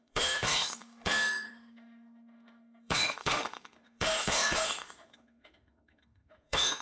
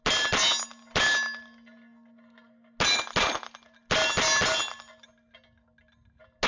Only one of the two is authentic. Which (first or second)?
second